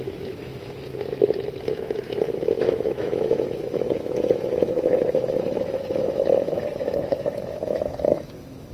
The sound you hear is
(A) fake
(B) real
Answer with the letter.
A